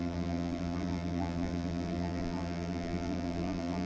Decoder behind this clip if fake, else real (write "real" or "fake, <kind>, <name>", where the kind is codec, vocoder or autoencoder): fake, vocoder, BigVGAN v2